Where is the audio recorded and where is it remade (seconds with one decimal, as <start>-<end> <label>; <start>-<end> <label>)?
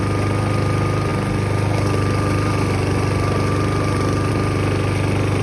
0.0-5.4 recorded